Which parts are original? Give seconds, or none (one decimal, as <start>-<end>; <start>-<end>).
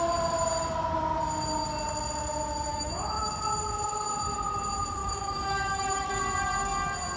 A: 0.0-2.7; 3.3-5.0; 6.1-7.2